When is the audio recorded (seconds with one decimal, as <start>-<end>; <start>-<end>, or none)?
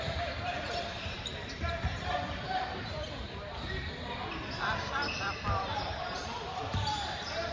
none